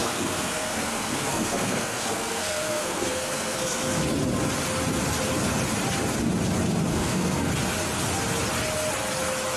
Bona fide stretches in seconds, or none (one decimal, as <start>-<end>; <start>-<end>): 4.0-6.9; 7.5-9.6